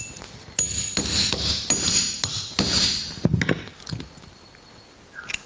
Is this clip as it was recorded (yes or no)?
yes